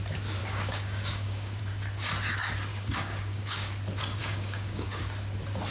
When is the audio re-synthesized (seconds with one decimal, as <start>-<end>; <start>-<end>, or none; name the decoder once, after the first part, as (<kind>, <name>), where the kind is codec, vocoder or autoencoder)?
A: 0.4-1.6 (codec, DAC); 2.7-3.7; 4.2-5.0